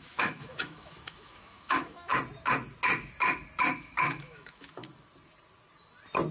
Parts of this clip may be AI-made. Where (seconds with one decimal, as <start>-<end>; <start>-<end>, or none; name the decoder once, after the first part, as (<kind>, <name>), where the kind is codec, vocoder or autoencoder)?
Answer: 0.0-2.1 (autoencoder, DAC-VAE); 3.8-4.8